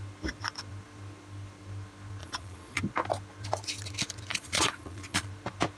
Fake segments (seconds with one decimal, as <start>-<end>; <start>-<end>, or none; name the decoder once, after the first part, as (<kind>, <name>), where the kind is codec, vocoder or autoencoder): 2.2-2.8 (vocoder, Vocos); 4.3-5.3